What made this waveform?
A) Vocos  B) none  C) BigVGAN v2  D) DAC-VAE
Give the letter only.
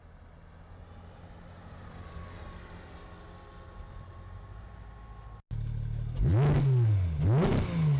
B